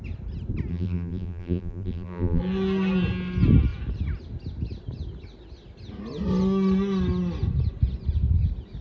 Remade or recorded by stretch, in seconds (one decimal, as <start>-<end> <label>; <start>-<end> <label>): 0.0-0.7 recorded; 0.7-2.4 remade; 2.4-8.8 recorded